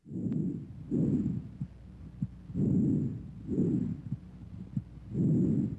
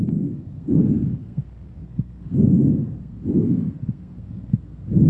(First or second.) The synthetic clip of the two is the second